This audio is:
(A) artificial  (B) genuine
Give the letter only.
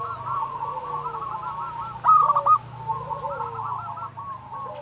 B